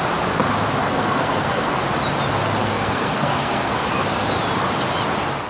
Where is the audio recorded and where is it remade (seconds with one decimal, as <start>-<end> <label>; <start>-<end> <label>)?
0.0-0.8 recorded; 0.8-1.8 remade; 1.8-2.6 recorded; 2.6-3.9 remade; 3.9-5.5 recorded